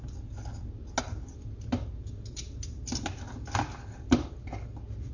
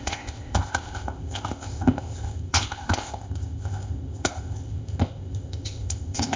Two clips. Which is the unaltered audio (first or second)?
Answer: first